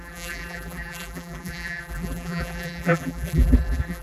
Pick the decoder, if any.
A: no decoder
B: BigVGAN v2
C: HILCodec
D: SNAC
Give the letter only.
B